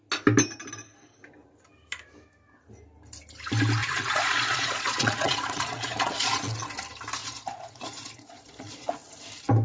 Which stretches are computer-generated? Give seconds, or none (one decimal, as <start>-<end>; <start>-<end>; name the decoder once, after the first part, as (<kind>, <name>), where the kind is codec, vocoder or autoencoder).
3.8-6.7 (vocoder, Vocos); 7.2-8.9